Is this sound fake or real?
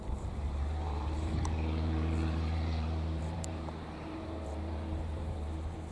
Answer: fake